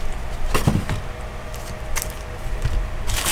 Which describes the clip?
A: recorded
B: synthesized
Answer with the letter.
A